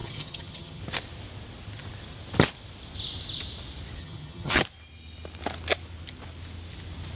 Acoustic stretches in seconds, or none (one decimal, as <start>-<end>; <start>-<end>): 0.8-4.0; 4.6-7.2